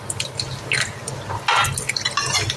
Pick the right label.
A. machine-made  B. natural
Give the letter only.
B